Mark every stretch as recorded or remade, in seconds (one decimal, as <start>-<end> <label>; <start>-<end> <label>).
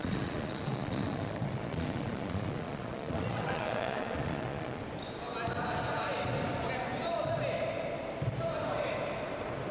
0.0-4.8 remade; 4.8-9.7 recorded